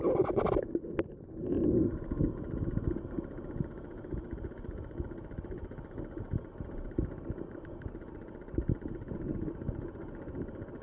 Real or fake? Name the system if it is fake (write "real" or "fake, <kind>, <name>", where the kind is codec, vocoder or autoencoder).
real